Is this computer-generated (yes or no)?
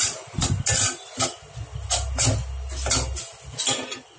no